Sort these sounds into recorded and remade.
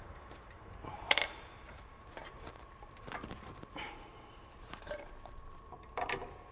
remade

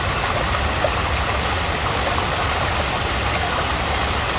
recorded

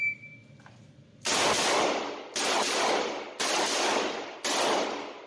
recorded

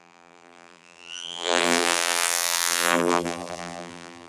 remade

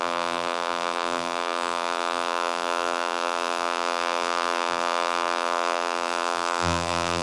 remade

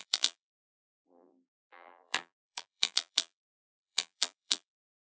remade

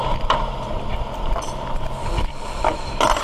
remade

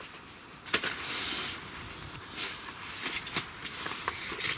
recorded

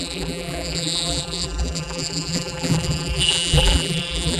remade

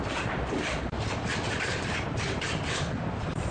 remade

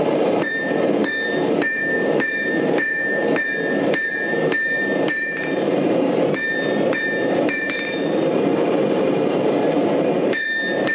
remade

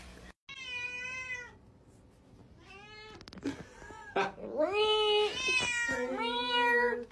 recorded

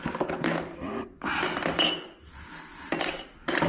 recorded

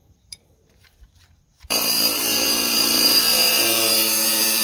remade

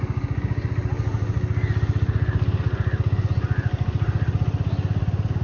recorded